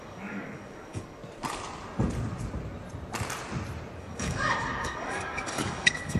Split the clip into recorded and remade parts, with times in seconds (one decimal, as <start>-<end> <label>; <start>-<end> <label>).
0.0-1.2 remade; 1.2-4.0 recorded; 4.0-6.2 remade

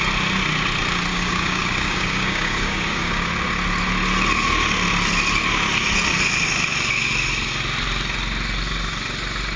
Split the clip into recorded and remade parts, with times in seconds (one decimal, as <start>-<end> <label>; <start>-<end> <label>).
0.0-1.1 recorded; 1.1-3.3 remade; 3.3-9.6 recorded

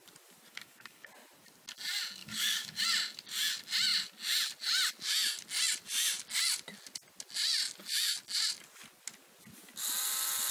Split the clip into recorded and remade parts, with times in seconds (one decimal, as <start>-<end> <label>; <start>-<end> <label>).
0.0-0.5 recorded; 0.5-1.1 remade; 1.1-2.2 recorded; 2.2-2.8 remade; 2.8-10.5 recorded

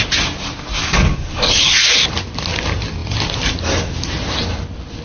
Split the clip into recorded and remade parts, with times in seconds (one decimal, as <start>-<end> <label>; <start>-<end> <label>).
0.0-0.8 recorded; 0.8-1.7 remade; 1.7-5.0 recorded